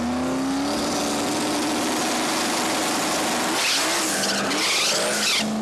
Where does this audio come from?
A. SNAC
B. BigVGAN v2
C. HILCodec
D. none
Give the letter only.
D